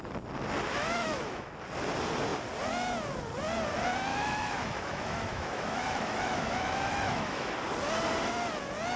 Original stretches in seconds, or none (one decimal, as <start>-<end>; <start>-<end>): 0.0-0.8; 1.5-4.1; 7.5-9.0